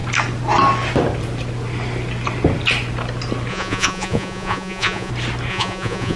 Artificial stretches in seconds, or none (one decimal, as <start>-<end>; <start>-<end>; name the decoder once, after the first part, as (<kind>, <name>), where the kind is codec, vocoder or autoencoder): 3.5-5.1 (vocoder, Vocos); 5.5-6.2